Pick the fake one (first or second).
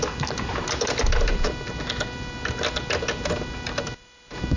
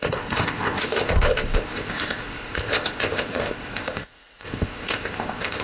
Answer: second